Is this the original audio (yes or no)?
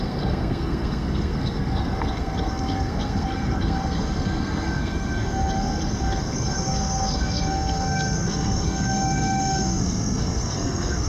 no